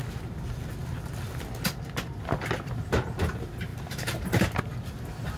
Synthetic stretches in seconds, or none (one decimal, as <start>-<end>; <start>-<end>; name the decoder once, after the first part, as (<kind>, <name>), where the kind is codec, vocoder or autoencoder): 3.7-4.8 (vocoder, BigVGAN v2)